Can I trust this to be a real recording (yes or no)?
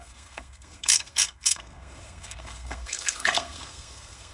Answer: no